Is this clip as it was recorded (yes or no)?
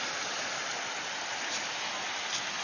yes